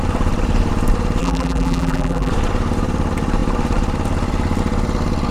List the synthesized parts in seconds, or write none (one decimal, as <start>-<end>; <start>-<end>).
1.2-2.3